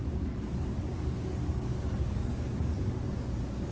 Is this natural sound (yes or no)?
no